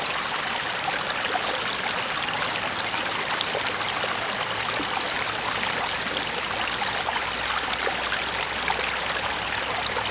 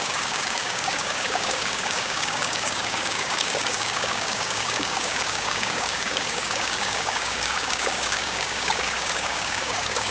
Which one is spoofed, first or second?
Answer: second